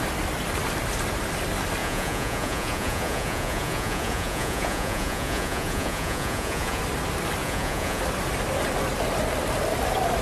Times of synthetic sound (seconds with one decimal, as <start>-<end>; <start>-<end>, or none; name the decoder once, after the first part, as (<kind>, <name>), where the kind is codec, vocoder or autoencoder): 1.8-6.8 (vocoder, Vocos); 7.4-8.0